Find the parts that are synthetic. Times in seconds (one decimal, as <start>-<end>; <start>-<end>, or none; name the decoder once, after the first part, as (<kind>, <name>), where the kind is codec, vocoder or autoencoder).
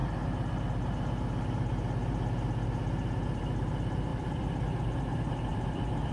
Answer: 4.1-5.0 (vocoder, BigVGAN v2); 5.5-6.1